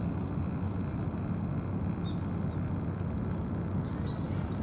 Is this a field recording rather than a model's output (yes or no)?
yes